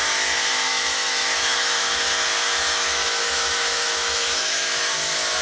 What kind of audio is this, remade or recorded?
remade